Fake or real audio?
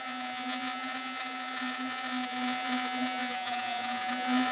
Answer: fake